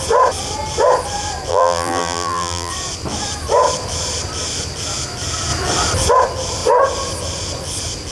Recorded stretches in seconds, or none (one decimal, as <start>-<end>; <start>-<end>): 0.0-1.5; 2.7-8.1